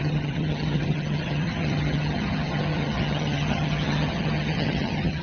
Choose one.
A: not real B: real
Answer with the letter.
A